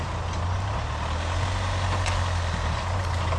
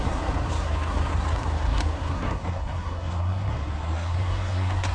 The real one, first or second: first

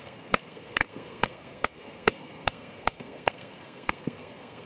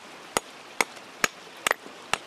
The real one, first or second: second